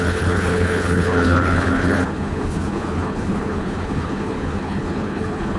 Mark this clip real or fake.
fake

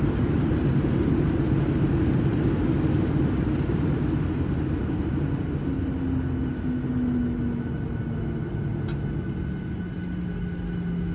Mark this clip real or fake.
real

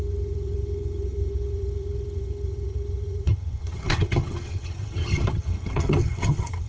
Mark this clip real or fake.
fake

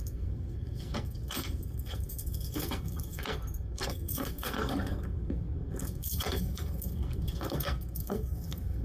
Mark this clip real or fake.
fake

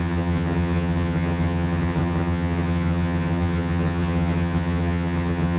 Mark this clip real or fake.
fake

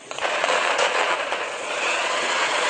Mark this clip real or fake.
fake